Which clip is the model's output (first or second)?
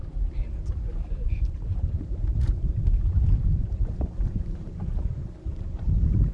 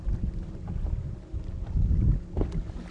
first